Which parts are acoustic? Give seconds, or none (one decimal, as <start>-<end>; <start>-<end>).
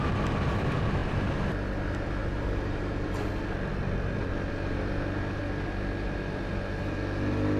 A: 0.0-2.2; 3.3-7.6